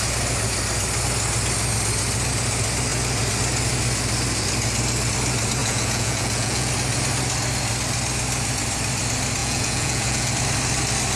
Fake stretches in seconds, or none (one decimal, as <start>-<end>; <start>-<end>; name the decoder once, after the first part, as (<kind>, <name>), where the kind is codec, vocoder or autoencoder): 5.6-6.7 (vocoder, Vocos); 9.4-10.3